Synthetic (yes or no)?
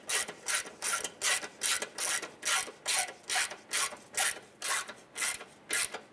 no